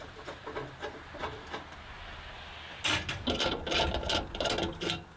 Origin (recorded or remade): recorded